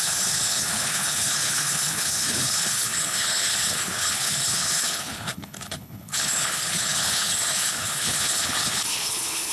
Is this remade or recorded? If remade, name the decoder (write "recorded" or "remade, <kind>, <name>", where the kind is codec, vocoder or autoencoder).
remade, codec, HILCodec